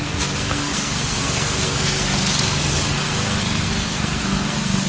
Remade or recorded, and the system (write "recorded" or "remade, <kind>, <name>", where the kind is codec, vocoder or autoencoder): remade, codec, SNAC